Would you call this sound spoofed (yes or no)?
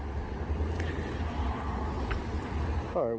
no